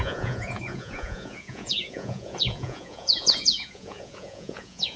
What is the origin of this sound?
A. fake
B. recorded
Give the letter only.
A